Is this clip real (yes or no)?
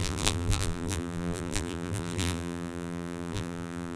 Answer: no